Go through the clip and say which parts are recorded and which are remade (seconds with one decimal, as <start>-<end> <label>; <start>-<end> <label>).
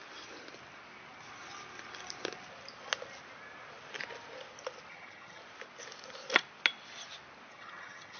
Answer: 0.0-4.9 recorded; 4.9-5.4 remade; 5.4-7.5 recorded; 7.5-8.2 remade